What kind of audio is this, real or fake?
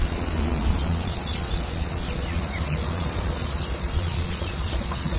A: fake